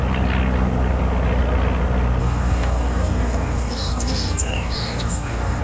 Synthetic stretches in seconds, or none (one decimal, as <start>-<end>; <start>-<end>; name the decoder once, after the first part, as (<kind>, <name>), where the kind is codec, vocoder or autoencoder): 2.2-5.6 (codec, DAC)